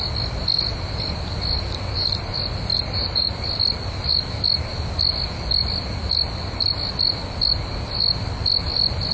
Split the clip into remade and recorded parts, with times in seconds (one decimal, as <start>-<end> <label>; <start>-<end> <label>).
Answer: 0.0-2.7 recorded; 2.7-3.3 remade; 3.3-9.1 recorded